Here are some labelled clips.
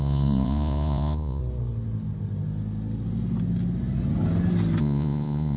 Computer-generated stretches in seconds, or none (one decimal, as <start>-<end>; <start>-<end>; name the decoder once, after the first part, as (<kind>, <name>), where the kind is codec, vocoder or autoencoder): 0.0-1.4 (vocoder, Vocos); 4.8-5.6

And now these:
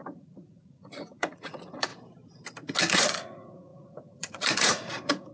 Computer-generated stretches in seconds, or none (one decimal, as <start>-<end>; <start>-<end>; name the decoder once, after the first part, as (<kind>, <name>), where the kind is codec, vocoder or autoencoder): 0.0-1.9 (vocoder, Vocos); 2.8-5.3

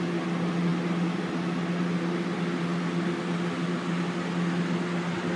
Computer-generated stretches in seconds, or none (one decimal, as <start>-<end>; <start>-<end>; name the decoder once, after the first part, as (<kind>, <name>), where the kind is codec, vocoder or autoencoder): none